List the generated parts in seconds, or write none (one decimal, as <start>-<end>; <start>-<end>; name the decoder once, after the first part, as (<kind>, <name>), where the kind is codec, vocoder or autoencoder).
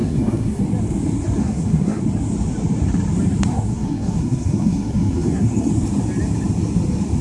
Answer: 0.0-0.6 (codec, SNAC); 1.4-2.0; 3.5-5.7